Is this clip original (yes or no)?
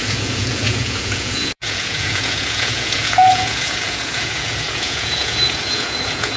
no